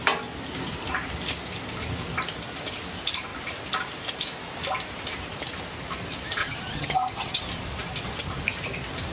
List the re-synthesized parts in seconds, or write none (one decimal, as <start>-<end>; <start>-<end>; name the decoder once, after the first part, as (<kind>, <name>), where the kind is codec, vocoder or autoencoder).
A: 6.4-7.4 (vocoder, HiFi-GAN)